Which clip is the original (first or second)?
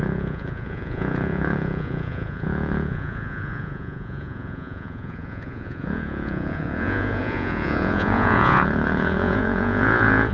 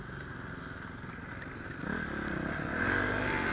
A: second